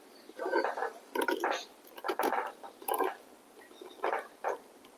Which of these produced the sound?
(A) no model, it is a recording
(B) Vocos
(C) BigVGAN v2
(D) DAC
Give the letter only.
C